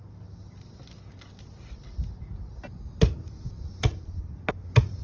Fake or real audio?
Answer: real